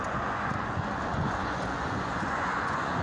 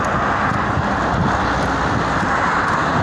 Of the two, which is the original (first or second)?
second